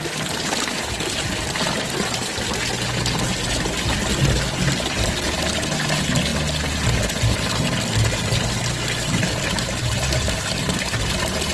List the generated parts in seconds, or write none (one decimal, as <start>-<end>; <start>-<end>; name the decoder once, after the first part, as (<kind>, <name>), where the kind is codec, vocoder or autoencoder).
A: none